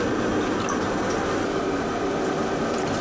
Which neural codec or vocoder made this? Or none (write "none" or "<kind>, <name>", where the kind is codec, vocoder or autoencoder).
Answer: none